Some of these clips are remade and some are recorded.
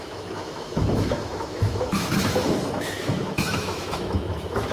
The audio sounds remade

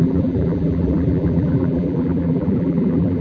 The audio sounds remade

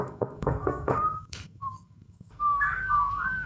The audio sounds remade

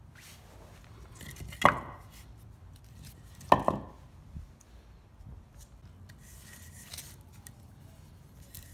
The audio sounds recorded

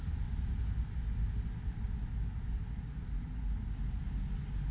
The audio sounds recorded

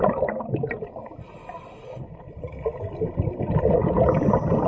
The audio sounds recorded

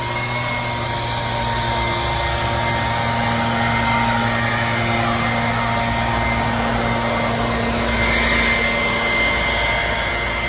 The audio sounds recorded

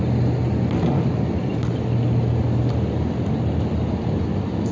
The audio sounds recorded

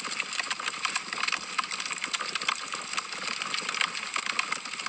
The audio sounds recorded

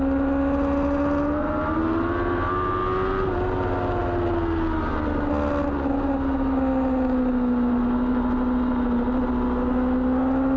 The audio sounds recorded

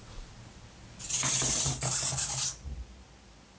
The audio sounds recorded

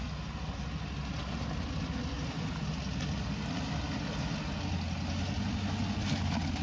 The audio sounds recorded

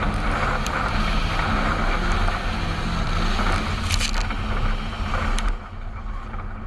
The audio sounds recorded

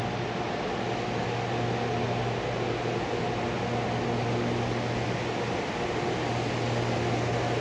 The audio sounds recorded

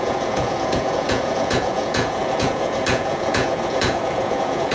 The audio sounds remade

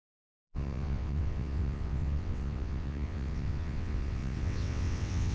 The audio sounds remade